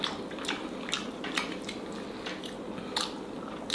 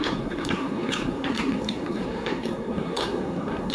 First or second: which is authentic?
first